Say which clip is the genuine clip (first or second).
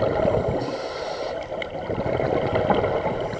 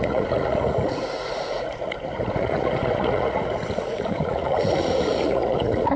first